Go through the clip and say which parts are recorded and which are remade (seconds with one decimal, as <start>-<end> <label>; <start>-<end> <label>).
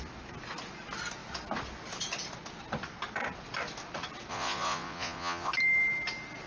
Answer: 0.0-4.3 recorded; 4.3-5.5 remade; 5.5-6.5 recorded